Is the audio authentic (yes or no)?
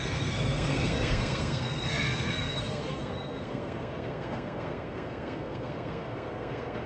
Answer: no